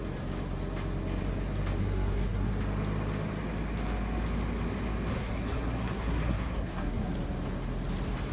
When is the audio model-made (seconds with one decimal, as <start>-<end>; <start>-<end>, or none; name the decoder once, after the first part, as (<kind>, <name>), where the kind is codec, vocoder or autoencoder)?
1.8-2.5 (codec, SNAC); 5.1-7.1